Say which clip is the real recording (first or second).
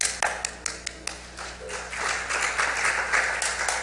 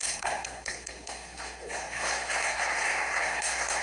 first